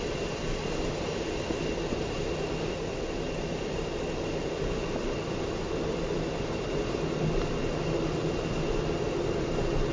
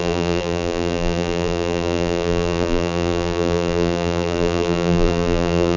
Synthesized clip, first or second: second